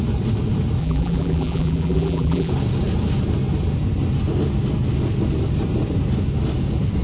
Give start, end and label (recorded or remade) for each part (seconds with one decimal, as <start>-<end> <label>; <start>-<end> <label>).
0.0-0.8 recorded; 0.8-2.5 remade; 2.5-7.0 recorded